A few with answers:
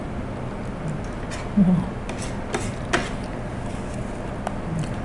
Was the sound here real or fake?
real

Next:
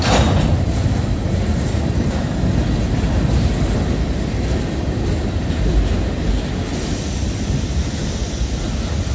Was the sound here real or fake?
real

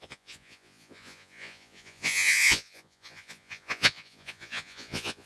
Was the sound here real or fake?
fake